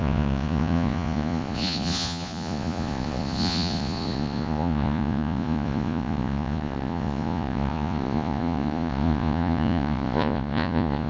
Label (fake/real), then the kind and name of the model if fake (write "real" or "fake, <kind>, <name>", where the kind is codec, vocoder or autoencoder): fake, vocoder, Vocos